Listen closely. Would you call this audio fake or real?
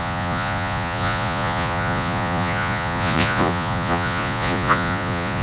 fake